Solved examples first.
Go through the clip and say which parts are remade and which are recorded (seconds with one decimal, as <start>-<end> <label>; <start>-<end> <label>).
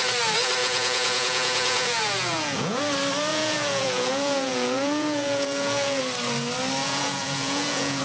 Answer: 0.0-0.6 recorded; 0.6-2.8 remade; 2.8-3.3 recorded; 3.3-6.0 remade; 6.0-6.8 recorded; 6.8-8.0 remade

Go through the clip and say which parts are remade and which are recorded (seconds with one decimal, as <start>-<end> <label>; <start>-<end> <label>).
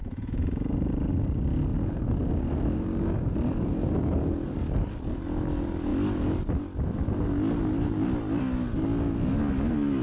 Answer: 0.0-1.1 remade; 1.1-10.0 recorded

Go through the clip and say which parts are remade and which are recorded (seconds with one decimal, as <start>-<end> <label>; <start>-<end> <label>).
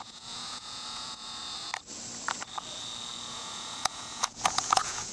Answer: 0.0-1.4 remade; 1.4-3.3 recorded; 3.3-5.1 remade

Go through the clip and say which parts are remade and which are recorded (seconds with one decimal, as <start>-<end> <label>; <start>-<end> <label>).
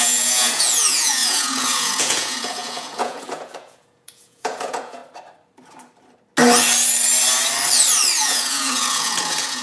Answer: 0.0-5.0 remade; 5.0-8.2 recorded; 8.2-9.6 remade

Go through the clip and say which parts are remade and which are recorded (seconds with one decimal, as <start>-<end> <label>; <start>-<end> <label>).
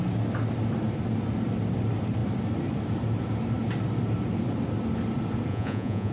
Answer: 0.0-5.5 recorded; 5.5-6.1 remade